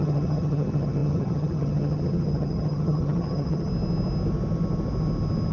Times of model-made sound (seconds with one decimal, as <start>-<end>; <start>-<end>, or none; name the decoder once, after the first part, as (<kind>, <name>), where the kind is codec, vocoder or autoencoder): 0.0-3.7 (vocoder, HiFi-GAN)